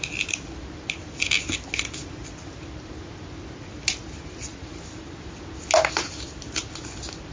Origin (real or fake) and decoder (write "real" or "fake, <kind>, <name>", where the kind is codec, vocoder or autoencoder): real